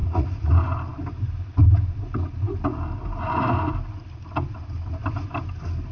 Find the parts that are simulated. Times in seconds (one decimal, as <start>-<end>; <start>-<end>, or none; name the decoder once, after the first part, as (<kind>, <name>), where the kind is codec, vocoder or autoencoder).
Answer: 0.0-0.5 (vocoder, Vocos)